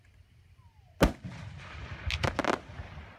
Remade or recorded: recorded